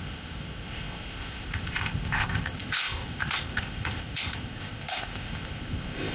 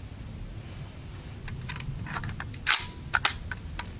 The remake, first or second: first